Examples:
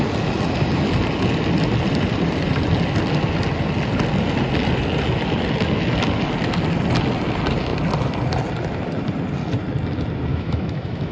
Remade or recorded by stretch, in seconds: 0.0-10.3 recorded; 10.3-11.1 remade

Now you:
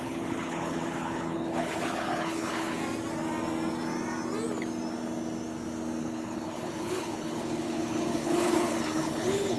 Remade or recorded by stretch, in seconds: 0.0-2.8 remade; 2.8-6.0 recorded; 6.0-9.6 remade

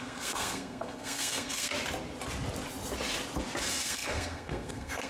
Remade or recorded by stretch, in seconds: 0.0-1.7 remade; 1.7-3.6 recorded; 3.6-5.1 remade

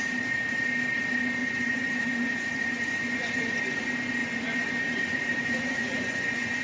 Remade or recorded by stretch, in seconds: 0.0-1.4 recorded; 1.4-3.8 remade; 3.8-4.2 recorded; 4.2-6.6 remade

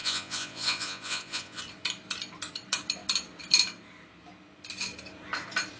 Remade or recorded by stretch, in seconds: 0.0-1.6 remade; 1.6-5.8 recorded

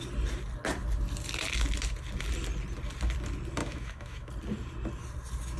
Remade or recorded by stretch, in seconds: 0.0-3.6 recorded; 3.6-4.3 remade; 4.3-5.6 recorded